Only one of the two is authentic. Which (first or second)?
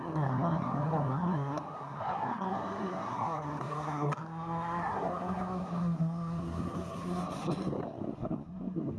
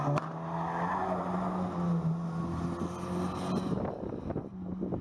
second